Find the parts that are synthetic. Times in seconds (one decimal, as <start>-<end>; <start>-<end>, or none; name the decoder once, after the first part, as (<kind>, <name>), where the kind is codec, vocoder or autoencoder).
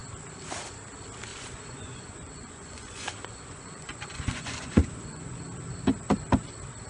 1.3-5.4 (vocoder, Vocos)